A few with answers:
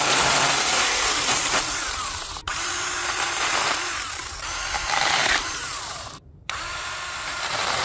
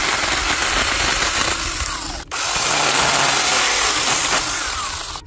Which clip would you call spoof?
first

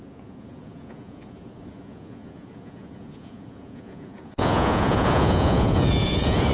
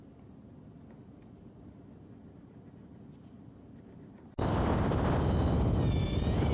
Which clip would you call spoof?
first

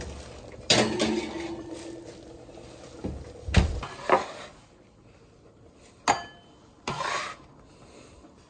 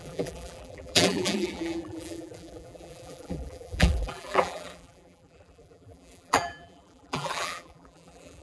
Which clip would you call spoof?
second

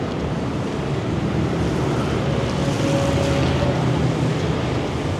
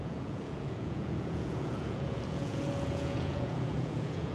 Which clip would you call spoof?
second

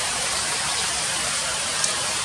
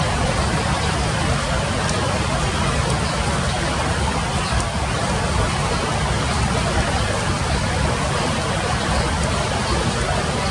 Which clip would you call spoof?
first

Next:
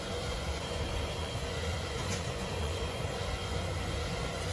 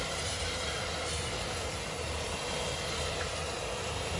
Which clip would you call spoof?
first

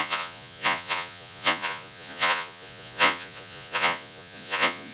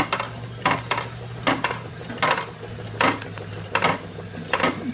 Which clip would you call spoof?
first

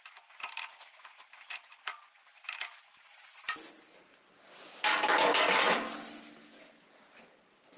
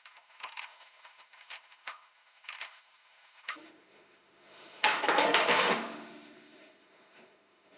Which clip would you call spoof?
second